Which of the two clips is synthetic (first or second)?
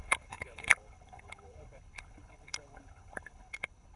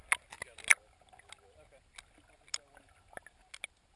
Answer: first